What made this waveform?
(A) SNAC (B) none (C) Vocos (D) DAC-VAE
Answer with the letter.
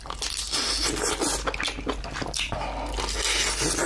B